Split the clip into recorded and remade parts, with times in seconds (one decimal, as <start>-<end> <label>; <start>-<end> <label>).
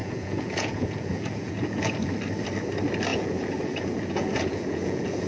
0.0-2.1 remade; 2.1-3.1 recorded; 3.1-5.3 remade